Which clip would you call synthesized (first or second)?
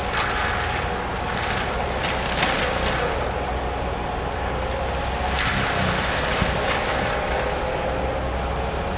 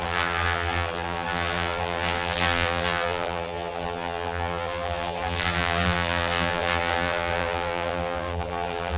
second